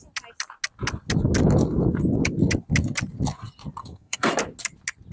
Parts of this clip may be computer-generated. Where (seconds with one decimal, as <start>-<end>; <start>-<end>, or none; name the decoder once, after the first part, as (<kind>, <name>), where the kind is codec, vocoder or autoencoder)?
3.8-4.3 (codec, SNAC)